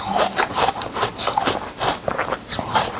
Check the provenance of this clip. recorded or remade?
remade